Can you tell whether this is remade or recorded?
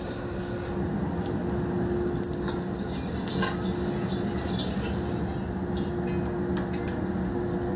recorded